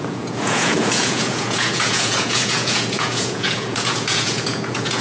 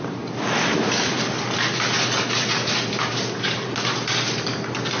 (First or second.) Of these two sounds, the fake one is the first